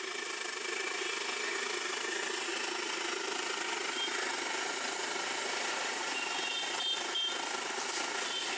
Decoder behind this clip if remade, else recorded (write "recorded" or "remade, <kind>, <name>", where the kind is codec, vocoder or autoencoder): recorded